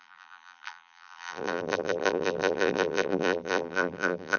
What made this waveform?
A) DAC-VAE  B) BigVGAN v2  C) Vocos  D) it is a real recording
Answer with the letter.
B